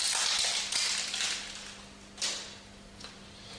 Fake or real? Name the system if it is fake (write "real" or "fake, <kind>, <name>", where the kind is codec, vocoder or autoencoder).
real